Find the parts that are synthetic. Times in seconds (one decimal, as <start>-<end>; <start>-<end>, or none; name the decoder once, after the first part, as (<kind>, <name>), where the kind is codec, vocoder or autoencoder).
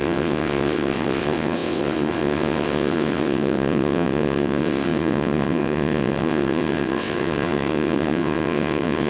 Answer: 0.0-9.1 (vocoder, WaveNeXt)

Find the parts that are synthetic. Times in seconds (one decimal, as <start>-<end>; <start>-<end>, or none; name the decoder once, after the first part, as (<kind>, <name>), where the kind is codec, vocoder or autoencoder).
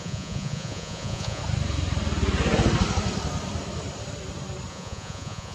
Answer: 0.0-1.4 (vocoder, Vocos); 4.7-5.5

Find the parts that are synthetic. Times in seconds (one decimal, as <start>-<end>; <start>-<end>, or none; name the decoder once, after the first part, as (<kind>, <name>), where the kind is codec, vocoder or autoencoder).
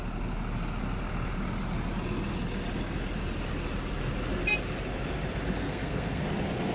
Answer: 5.6-6.2 (codec, SNAC)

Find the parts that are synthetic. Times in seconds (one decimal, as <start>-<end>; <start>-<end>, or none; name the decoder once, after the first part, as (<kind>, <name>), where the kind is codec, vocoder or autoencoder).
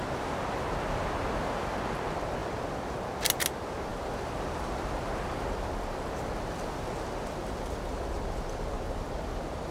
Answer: none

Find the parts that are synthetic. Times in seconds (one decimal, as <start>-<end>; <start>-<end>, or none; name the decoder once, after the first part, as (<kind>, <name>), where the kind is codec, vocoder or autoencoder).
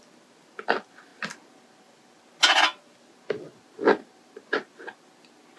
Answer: none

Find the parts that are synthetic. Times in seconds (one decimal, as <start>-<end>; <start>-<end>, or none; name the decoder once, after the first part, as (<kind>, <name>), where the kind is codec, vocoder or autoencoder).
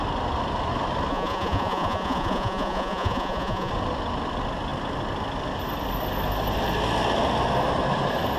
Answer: 1.1-3.7 (vocoder, Vocos)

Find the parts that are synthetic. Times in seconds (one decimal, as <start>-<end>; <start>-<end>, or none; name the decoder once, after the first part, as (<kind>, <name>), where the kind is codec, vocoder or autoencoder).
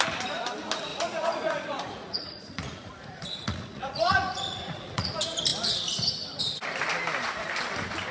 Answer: 0.9-5.1 (vocoder, Vocos)